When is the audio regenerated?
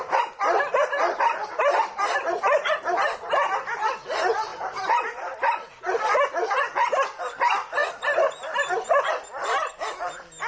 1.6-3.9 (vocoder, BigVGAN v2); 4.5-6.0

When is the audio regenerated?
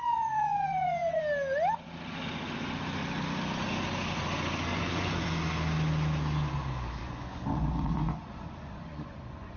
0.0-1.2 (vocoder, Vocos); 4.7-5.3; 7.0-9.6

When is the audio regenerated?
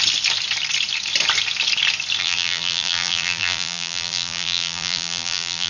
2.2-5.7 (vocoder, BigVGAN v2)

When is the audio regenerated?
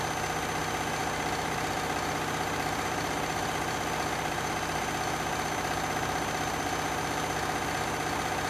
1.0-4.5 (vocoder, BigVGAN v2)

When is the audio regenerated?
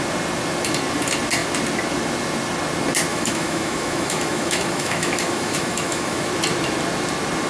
3.1-6.3 (autoencoder, DAC-VAE)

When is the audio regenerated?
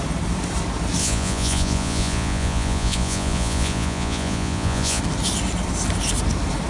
1.0-5.0 (vocoder, Vocos)